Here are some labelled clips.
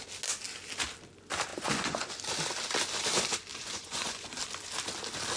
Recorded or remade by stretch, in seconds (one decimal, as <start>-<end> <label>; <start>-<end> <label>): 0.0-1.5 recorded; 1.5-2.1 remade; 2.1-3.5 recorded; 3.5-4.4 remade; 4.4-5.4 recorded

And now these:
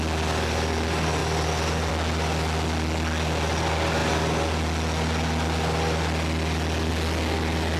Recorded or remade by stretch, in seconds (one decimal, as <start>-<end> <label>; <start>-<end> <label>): 0.0-7.8 recorded

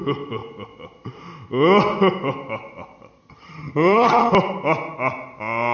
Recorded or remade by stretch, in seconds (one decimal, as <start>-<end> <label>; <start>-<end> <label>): 0.0-3.2 recorded; 3.2-4.3 remade; 4.3-5.7 recorded

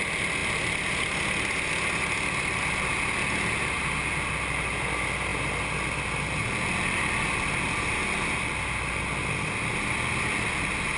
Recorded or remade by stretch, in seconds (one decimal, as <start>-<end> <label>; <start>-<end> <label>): 0.0-11.0 recorded